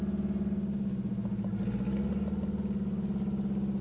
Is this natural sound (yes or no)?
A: yes